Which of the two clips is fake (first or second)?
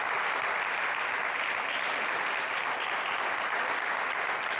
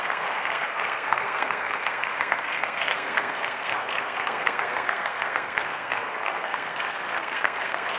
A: second